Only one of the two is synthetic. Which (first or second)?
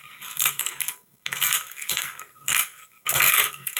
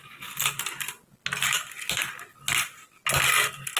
first